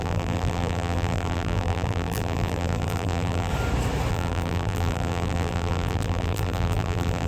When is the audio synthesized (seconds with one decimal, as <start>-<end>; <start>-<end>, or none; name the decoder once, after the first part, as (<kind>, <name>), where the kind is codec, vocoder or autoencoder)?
0.0-3.5 (vocoder, BigVGAN v2); 4.1-7.3